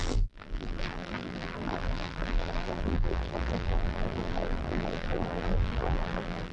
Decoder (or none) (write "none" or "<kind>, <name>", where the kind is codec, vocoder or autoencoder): vocoder, BigVGAN v2